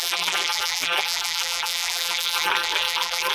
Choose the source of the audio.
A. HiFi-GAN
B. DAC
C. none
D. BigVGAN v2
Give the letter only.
D